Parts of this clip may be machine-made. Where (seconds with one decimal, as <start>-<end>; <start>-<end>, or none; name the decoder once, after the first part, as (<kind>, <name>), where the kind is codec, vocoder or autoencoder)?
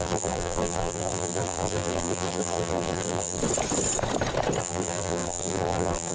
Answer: 0.0-3.4 (vocoder, BigVGAN v2); 4.6-6.1